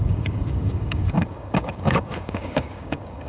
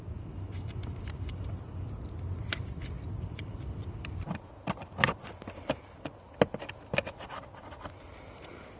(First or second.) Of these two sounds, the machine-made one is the first